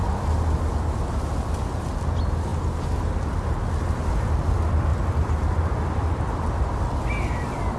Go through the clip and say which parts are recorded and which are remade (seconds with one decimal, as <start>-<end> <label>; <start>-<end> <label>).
0.0-4.9 recorded; 4.9-6.8 remade; 6.8-7.8 recorded